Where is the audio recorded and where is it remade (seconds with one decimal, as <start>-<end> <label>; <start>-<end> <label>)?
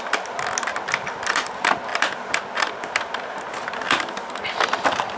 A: 0.0-5.2 recorded